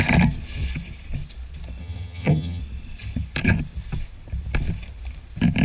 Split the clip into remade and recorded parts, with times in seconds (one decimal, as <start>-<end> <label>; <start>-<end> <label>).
0.0-1.8 recorded; 1.8-2.6 remade; 2.6-5.6 recorded